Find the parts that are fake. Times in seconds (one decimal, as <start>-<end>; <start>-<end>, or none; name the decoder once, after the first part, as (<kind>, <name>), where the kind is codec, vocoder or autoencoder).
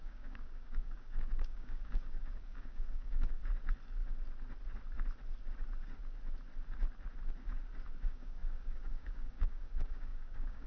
0.0-3.4 (codec, DAC); 8.0-10.7